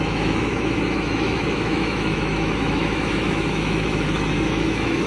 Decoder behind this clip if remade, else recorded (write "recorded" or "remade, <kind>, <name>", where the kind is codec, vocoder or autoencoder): remade, autoencoder, DAC-VAE